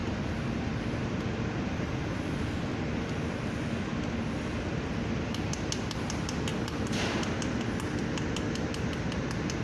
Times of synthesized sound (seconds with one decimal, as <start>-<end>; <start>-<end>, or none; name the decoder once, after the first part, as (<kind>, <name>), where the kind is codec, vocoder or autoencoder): 6.5-7.2 (vocoder, BigVGAN v2)